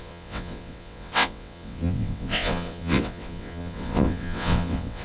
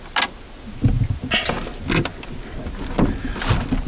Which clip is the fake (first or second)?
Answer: first